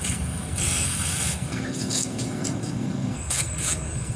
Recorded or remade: remade